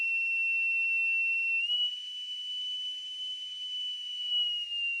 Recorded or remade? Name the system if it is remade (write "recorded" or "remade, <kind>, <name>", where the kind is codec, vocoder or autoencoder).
recorded